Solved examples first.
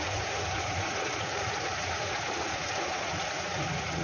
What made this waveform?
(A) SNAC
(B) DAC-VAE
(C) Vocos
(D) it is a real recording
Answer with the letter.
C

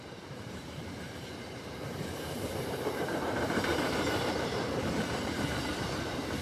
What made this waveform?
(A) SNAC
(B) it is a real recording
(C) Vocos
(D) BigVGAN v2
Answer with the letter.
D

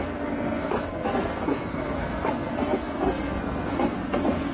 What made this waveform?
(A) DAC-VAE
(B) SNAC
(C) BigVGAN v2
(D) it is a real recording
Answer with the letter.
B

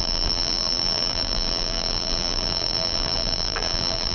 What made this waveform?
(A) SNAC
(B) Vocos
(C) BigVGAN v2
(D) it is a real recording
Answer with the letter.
C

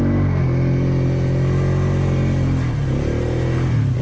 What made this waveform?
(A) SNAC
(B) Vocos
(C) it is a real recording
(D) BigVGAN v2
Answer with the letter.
C